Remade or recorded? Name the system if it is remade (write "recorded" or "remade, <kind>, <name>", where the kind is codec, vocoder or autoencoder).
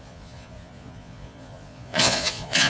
remade, vocoder, Vocos